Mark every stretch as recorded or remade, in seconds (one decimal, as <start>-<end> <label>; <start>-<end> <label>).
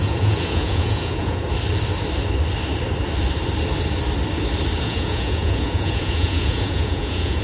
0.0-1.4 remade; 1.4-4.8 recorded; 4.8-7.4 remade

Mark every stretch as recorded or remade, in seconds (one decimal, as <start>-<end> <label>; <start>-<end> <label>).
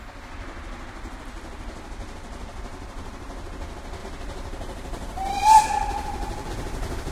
0.0-2.7 recorded; 2.7-3.5 remade; 3.5-4.0 recorded; 4.0-6.5 remade; 6.5-7.1 recorded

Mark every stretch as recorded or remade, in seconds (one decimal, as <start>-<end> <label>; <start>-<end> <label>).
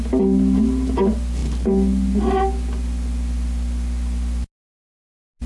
0.0-5.5 recorded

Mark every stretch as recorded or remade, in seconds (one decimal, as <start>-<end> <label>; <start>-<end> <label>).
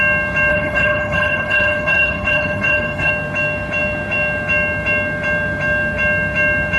0.0-0.5 recorded; 0.5-3.1 remade; 3.1-6.8 recorded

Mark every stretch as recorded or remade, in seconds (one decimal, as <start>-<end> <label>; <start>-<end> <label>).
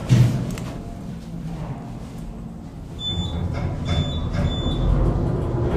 0.0-5.8 recorded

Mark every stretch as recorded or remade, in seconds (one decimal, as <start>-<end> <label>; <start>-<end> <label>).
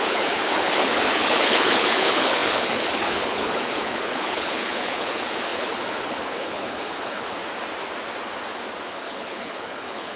0.0-7.4 remade; 7.4-9.0 recorded; 9.0-10.2 remade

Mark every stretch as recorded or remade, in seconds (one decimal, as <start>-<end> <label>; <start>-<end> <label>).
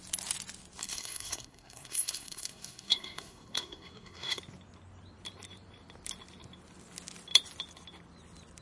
0.0-0.8 recorded; 0.8-4.4 remade; 4.4-8.6 recorded